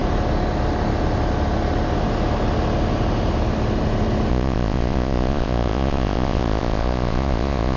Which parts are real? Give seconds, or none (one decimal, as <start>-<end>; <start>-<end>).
0.0-4.3

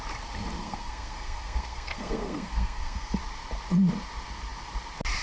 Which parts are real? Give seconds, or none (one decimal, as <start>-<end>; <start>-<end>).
0.0-0.6; 3.2-5.2

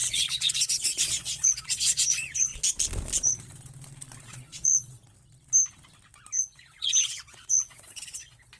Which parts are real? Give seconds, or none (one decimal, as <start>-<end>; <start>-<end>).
2.5-4.2; 5.0-6.4

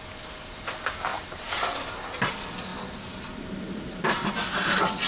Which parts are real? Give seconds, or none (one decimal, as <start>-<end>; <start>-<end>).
0.0-1.1; 1.9-2.7; 4.3-5.1

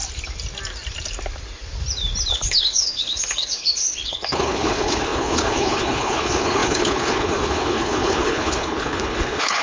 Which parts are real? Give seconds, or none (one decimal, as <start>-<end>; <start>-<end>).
0.0-2.3